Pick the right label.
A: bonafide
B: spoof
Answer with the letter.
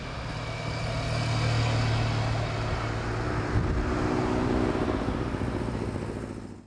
A